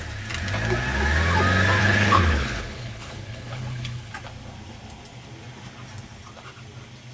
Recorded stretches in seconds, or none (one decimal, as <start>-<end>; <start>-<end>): 0.0-1.8; 4.1-7.1